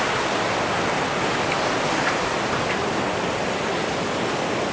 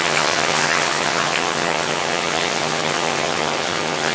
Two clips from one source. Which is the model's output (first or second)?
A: second